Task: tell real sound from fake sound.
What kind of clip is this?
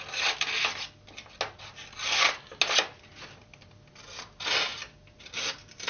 real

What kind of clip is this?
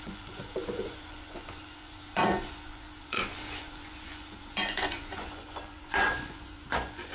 fake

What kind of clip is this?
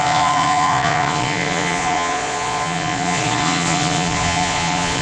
fake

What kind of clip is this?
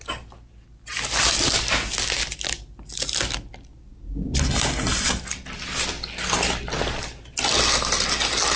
real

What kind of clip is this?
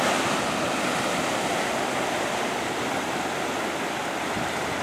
real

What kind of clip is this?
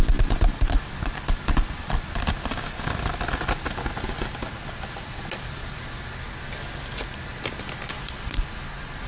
real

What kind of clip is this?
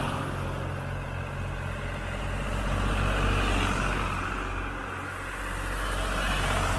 real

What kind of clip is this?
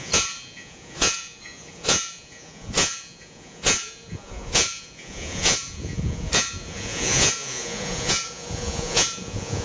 fake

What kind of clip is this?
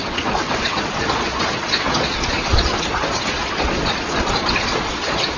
fake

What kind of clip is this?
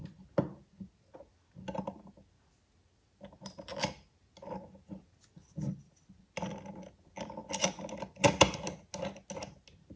real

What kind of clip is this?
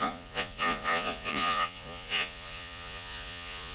fake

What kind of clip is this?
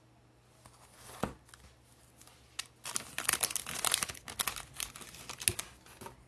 real